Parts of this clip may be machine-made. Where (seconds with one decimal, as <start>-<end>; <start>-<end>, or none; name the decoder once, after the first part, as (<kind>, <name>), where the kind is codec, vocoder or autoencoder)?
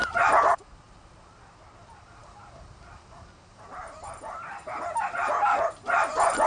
none